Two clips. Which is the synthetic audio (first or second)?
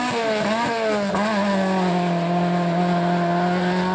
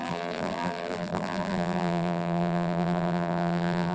second